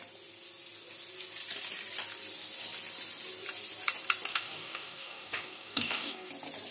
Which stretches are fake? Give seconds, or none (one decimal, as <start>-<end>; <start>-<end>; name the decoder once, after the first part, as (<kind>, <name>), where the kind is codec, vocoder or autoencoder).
4.3-6.3 (codec, DAC)